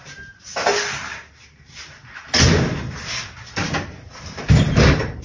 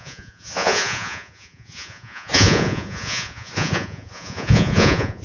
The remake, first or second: second